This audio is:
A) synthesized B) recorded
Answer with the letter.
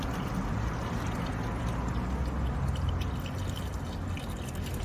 B